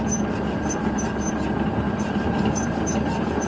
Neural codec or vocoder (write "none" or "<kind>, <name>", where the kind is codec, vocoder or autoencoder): none